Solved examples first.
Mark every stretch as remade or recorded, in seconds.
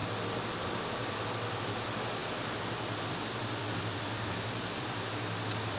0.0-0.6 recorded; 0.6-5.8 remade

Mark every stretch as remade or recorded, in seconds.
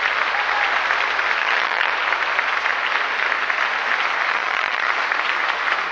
0.0-1.4 recorded; 1.4-1.9 remade; 1.9-4.3 recorded; 4.3-4.9 remade; 4.9-5.9 recorded